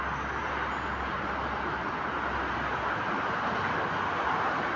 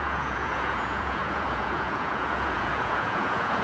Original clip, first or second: first